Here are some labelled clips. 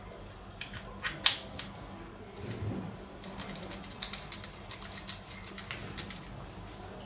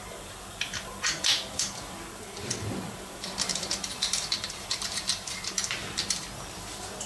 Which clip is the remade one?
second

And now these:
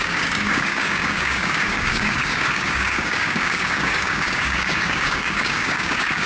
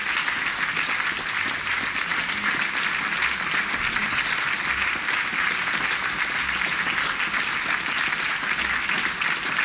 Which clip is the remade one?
first